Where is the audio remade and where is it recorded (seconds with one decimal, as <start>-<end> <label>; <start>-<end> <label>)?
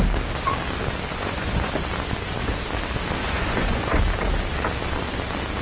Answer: 0.0-1.1 recorded; 1.1-1.7 remade; 1.7-3.2 recorded; 3.2-4.0 remade; 4.0-5.6 recorded